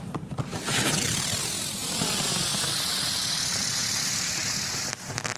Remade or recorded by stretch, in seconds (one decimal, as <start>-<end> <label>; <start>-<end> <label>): 0.0-0.5 recorded; 0.5-1.4 remade; 1.4-5.4 recorded